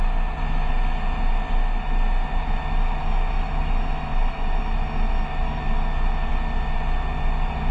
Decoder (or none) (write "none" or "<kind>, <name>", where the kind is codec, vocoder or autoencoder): none